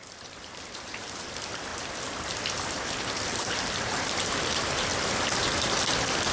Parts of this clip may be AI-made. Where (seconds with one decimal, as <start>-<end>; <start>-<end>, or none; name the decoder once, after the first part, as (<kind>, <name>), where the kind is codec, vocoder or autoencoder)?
0.0-1.7 (vocoder, BigVGAN v2); 3.3-4.9